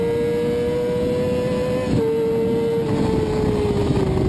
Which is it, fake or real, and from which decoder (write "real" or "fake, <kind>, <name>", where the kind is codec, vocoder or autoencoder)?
real